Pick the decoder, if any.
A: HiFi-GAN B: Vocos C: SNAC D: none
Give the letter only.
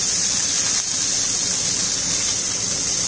D